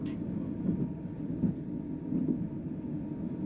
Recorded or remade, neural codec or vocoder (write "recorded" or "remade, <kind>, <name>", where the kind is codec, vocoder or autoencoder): recorded